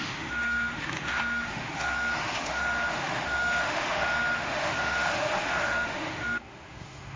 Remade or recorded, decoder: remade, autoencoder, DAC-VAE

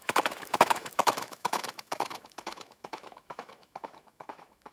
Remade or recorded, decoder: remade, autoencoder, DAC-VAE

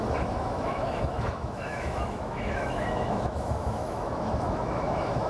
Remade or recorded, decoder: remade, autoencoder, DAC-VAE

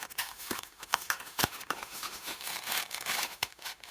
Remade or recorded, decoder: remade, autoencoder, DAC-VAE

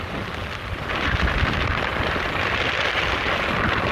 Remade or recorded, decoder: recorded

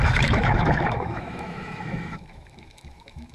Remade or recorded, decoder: remade, autoencoder, DAC-VAE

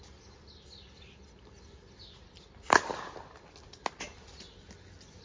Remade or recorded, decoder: recorded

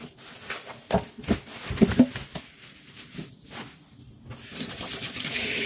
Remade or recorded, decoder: recorded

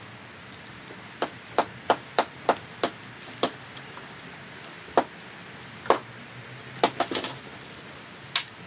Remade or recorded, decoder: recorded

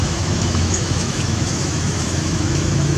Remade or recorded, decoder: remade, autoencoder, DAC-VAE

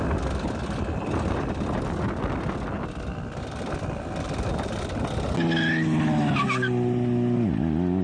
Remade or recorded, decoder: recorded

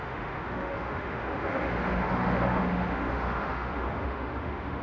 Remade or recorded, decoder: remade, autoencoder, DAC-VAE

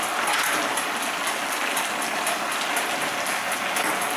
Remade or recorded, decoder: recorded